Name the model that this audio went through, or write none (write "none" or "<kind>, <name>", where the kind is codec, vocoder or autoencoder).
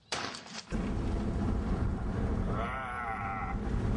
vocoder, BigVGAN v2